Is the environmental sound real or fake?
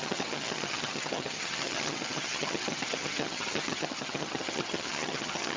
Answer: fake